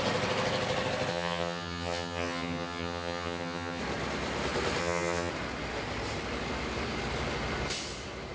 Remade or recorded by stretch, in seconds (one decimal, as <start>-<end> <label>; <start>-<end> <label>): 0.0-1.1 recorded; 1.1-3.8 remade; 3.8-4.8 recorded; 4.8-5.3 remade; 5.3-8.3 recorded